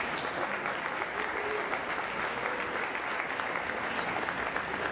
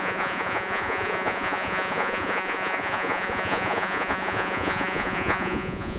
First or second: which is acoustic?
first